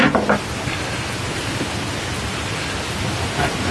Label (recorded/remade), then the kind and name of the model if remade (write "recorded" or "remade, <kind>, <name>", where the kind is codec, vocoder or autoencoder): recorded